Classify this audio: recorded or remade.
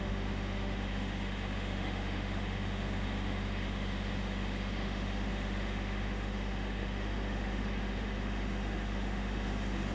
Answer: remade